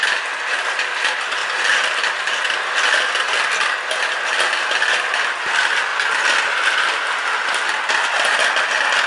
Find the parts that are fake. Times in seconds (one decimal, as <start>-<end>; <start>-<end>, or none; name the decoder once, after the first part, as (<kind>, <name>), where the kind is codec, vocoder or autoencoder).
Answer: none